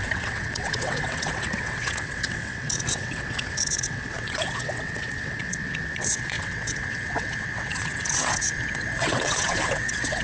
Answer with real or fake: fake